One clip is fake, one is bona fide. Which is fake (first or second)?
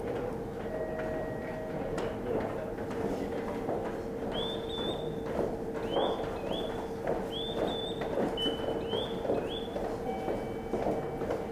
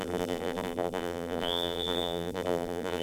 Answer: second